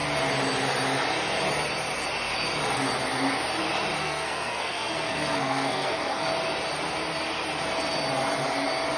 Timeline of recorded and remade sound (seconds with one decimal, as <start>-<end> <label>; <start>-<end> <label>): 0.0-4.0 recorded; 4.0-6.3 remade; 6.3-9.0 recorded

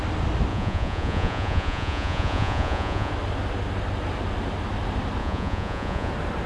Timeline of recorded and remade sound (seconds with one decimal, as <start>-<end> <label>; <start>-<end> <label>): 0.0-0.5 recorded; 0.5-3.1 remade; 3.1-5.2 recorded; 5.2-6.1 remade; 6.1-6.5 recorded